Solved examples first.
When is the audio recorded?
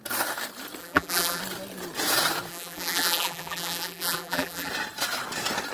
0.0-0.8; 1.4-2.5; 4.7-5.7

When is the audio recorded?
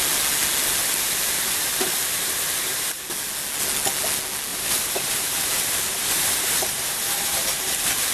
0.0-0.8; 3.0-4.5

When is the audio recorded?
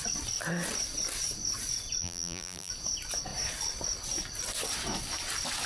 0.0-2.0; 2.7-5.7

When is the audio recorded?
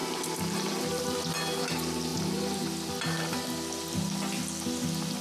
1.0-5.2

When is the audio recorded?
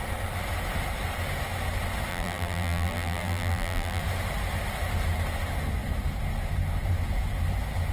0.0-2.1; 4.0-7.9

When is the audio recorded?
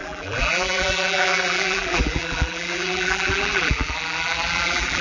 none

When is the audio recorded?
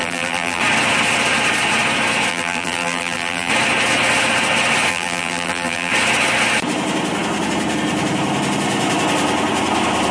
0.6-2.3; 3.5-4.9; 5.9-10.1